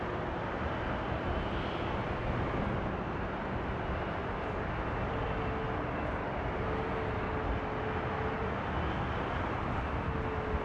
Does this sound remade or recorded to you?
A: recorded